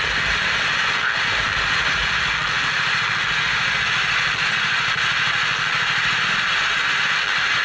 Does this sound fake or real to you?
real